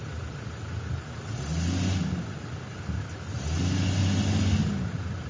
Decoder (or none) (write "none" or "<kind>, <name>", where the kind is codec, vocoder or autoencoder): none